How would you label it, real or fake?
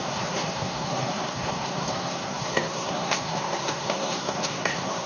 fake